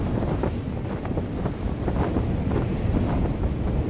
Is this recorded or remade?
recorded